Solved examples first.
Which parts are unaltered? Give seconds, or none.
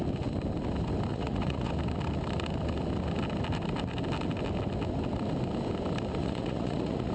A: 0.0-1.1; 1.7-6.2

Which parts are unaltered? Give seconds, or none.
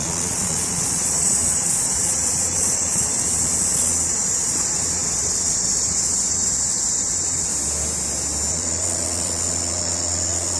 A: 7.5-8.5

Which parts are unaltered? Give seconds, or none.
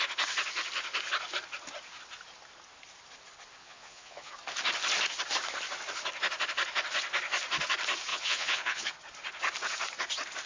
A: 0.0-3.6; 4.3-8.1; 8.9-10.5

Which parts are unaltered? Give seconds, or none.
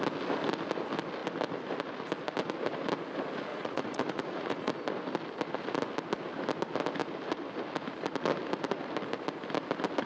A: 0.0-3.5; 4.7-10.1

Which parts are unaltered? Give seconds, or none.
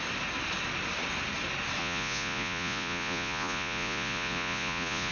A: 0.0-1.8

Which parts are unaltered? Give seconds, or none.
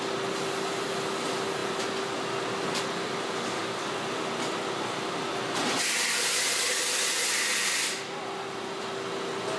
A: 0.0-9.6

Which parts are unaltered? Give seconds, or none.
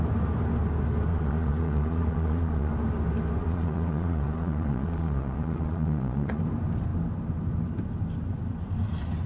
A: 0.0-1.1; 2.7-3.4; 6.4-9.3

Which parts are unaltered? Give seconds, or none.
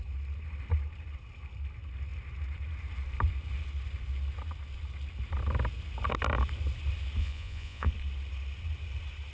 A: 0.0-7.2; 7.9-9.3